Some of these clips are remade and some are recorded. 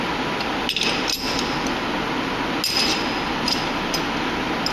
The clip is recorded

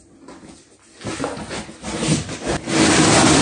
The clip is recorded